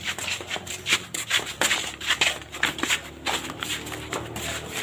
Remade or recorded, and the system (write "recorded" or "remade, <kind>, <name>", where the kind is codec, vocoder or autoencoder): recorded